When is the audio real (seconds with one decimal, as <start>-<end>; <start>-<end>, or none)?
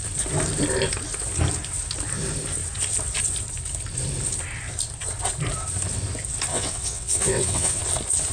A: 0.0-6.5; 7.8-8.3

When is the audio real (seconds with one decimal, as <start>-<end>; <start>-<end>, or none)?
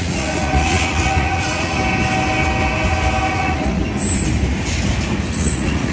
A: 1.8-3.3; 3.8-5.3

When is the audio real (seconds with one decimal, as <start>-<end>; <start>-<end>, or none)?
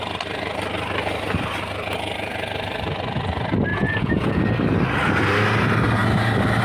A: 0.0-3.7; 4.4-6.6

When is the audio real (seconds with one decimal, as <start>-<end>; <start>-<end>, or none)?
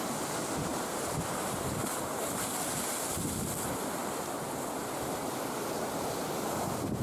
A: 0.0-0.7; 2.9-7.0